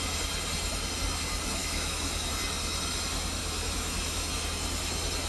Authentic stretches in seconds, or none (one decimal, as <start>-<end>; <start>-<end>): 0.0-1.6; 2.3-3.4; 4.3-5.3